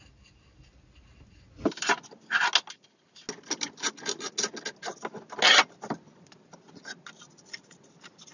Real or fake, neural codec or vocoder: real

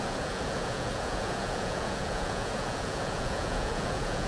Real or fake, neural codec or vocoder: fake, vocoder, Vocos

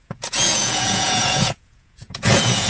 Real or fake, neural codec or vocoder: fake, vocoder, Vocos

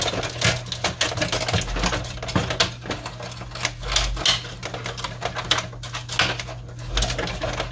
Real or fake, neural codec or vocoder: real